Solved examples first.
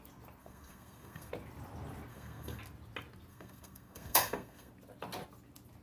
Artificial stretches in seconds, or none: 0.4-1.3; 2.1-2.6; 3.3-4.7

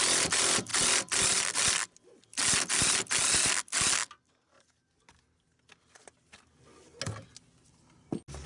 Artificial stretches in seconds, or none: none

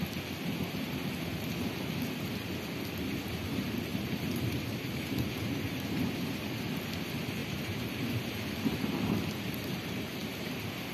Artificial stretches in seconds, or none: 3.9-5.7; 7.4-8.4

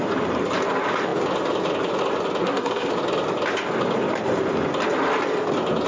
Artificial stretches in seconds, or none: 2.4-2.9

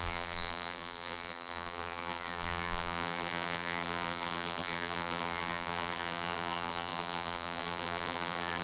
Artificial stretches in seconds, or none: 0.0-8.6

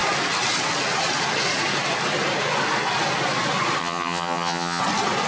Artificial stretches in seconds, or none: 3.8-4.8

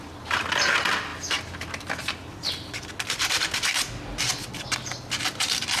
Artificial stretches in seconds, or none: none

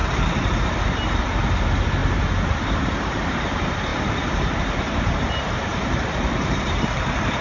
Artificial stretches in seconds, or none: 1.2-2.0; 2.6-5.7; 6.4-7.4